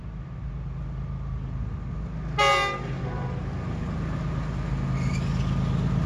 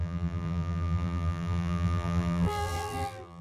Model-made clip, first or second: second